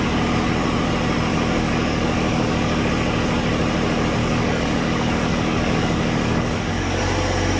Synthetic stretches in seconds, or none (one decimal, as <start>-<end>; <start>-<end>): 1.3-2.9; 4.2-7.0